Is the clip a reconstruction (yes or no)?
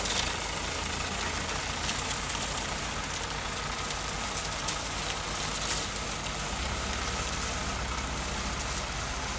no